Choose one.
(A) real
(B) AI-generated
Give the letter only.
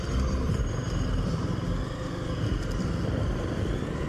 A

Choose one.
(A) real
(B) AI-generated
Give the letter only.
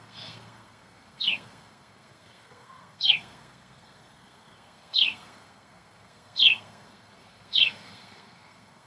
B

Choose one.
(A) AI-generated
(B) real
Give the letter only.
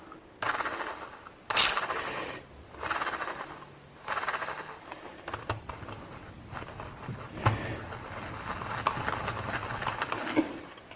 B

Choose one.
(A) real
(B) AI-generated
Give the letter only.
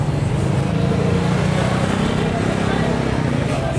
A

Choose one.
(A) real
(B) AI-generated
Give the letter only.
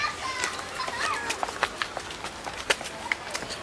A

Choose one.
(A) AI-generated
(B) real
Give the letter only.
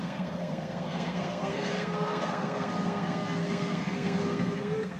A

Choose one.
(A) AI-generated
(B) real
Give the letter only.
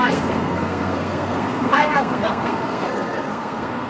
A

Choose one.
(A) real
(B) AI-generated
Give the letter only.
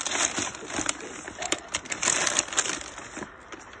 A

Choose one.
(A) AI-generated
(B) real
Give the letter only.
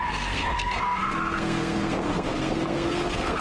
A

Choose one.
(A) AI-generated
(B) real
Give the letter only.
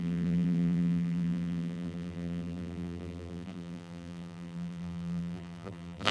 A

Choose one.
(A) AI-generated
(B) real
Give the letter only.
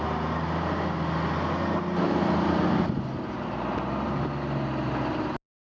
B